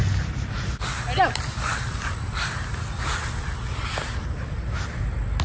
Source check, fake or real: real